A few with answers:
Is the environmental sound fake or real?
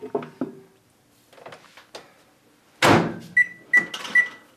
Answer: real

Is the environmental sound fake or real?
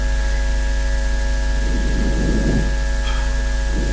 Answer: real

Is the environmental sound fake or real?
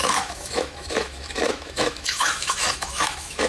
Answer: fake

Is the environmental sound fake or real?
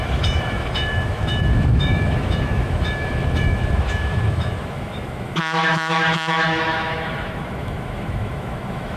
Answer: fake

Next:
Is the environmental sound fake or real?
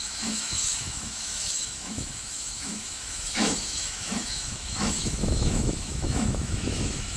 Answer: fake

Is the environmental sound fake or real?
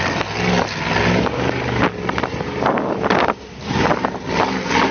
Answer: real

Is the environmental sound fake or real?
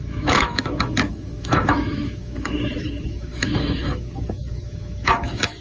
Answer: fake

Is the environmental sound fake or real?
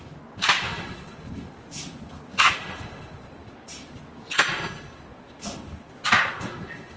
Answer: real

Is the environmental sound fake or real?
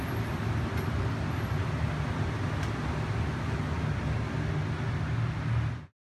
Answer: real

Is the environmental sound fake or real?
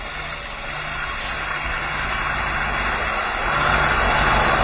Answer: real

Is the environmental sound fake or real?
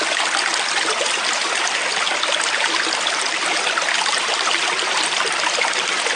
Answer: real